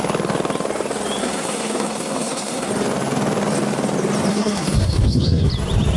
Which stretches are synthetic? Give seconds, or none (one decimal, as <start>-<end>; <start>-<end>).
1.2-2.7; 4.3-5.5